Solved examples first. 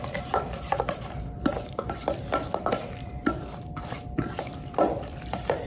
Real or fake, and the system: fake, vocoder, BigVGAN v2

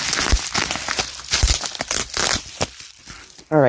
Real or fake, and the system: real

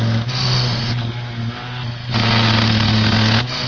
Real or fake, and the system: real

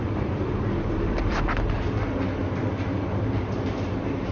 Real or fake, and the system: fake, vocoder, BigVGAN v2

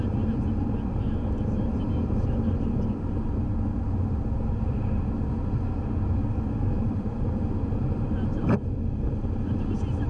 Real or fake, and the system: real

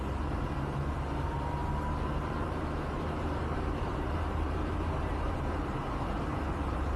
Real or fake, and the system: fake, vocoder, BigVGAN v2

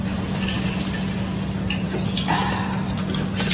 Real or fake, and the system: real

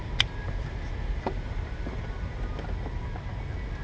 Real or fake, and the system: real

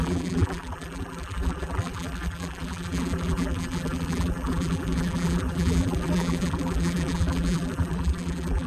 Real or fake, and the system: fake, vocoder, BigVGAN v2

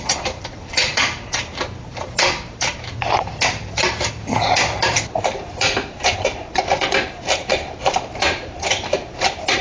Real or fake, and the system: fake, vocoder, BigVGAN v2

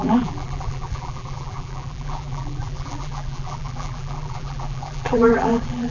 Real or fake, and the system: fake, vocoder, BigVGAN v2